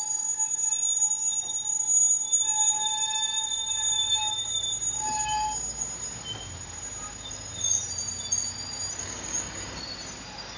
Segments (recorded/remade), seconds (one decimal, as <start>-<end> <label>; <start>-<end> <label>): 0.0-9.0 recorded; 9.0-9.8 remade; 9.8-10.6 recorded